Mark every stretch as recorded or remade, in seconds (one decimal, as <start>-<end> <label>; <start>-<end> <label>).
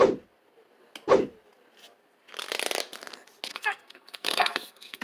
0.0-3.5 recorded; 3.5-5.0 remade